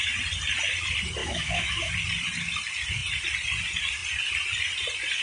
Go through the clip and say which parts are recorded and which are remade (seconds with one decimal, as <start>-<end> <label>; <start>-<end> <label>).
0.0-1.2 recorded; 1.2-1.9 remade; 1.9-5.2 recorded